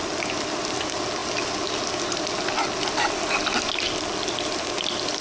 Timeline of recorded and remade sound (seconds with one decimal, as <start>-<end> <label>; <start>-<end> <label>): 0.0-5.2 recorded